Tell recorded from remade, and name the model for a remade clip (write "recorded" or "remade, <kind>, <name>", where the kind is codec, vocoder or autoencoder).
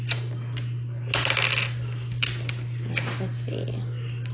recorded